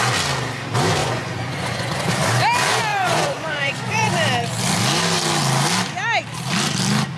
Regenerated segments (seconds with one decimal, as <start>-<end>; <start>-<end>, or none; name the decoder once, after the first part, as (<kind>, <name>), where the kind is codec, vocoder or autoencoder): 1.0-2.1 (vocoder, Vocos); 2.9-4.1